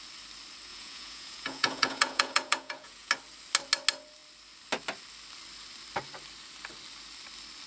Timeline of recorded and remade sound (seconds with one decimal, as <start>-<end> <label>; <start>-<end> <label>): 0.0-0.7 recorded; 0.7-3.1 remade; 3.1-7.7 recorded